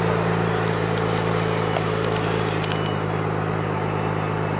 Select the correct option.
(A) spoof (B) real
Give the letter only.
B